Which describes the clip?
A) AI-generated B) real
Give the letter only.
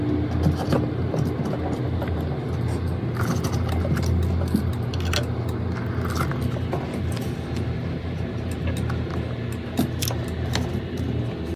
B